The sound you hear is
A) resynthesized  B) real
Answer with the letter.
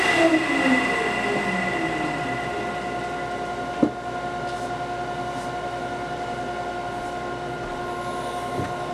B